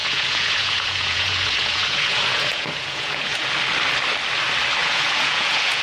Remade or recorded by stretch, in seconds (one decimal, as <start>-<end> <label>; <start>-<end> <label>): 0.0-3.5 remade; 3.5-4.8 recorded; 4.8-5.8 remade